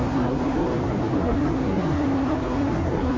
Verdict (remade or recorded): remade